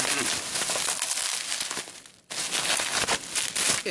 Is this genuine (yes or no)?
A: yes